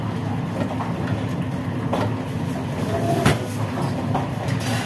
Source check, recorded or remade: recorded